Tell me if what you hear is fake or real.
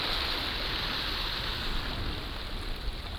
real